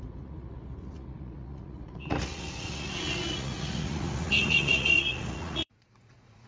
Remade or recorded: remade